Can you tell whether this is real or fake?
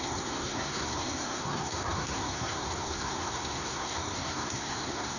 fake